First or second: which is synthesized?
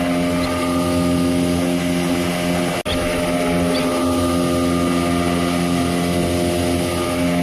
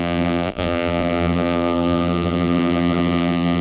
second